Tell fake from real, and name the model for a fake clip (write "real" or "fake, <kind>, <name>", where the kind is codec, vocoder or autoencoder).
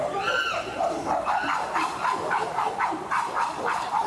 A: fake, vocoder, BigVGAN v2